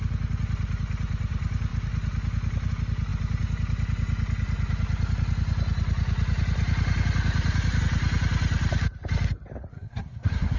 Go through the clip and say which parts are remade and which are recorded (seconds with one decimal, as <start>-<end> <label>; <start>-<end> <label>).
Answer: 0.0-9.7 recorded; 9.7-10.6 remade